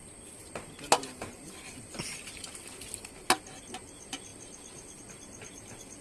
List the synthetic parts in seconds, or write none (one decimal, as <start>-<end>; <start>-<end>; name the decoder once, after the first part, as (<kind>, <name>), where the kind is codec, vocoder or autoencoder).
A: none